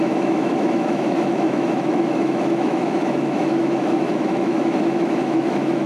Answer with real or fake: fake